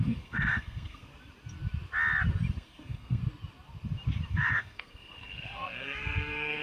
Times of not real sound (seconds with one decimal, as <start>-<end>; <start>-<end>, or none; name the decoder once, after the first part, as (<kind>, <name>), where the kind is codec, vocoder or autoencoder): 0.0-1.1 (codec, SNAC); 2.5-3.2; 4.3-6.6